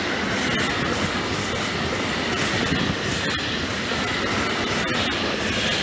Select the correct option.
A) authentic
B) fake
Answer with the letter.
A